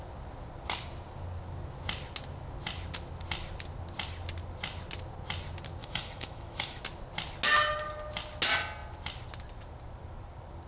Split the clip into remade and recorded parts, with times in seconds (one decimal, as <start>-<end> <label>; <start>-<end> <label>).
0.0-5.8 recorded; 5.8-6.8 remade; 6.8-10.7 recorded